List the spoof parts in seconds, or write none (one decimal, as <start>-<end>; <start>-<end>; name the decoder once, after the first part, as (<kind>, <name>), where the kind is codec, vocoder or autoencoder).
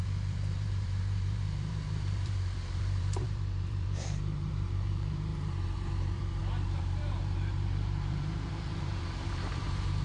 0.0-10.0 (vocoder, BigVGAN v2)